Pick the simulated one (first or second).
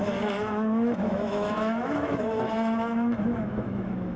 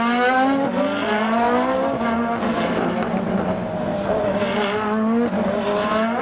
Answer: first